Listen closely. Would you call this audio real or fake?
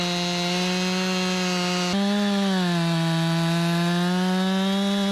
real